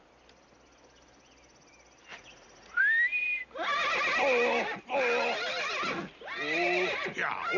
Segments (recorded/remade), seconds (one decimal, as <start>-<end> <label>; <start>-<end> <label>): 0.0-2.1 recorded; 2.1-2.8 remade; 2.8-7.6 recorded